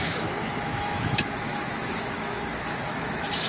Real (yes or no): no